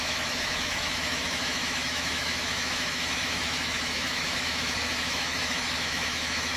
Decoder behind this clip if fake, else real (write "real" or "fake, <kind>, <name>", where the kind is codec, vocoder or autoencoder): fake, autoencoder, DAC-VAE